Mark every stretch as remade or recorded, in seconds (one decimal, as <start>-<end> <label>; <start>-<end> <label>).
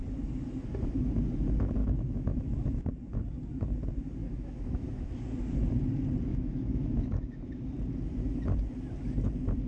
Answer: 0.0-1.8 recorded; 1.8-2.9 remade; 2.9-4.2 recorded; 4.2-5.1 remade; 5.1-6.3 recorded; 6.3-7.4 remade; 7.4-9.7 recorded